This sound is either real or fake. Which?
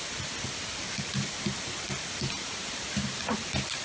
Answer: real